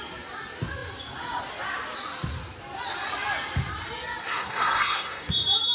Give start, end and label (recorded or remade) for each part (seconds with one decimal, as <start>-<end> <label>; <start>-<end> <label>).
0.0-4.2 recorded; 4.2-5.3 remade; 5.3-5.7 recorded